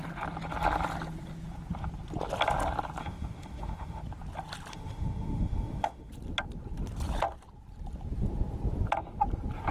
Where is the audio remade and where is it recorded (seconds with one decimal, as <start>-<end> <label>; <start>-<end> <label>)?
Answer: 0.0-3.0 recorded; 3.0-4.0 remade; 4.0-4.7 recorded; 4.7-6.1 remade; 6.1-9.7 recorded